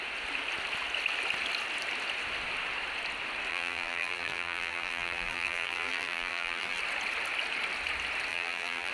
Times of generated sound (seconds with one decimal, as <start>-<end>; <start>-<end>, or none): 3.5-6.8; 8.3-8.9